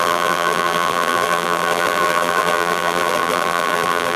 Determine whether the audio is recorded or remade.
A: remade